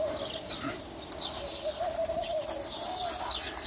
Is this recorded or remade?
recorded